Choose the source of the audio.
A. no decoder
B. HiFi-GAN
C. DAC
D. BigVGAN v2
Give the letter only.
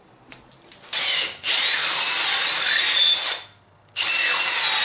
A